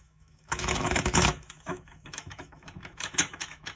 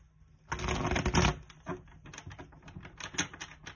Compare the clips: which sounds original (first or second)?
second